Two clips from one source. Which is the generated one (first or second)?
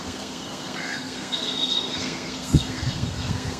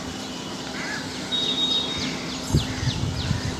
first